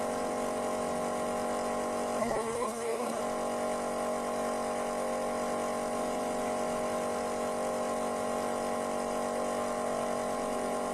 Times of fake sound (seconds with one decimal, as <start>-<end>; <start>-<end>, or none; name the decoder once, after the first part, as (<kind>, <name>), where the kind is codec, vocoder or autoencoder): 2.2-3.2 (codec, SNAC)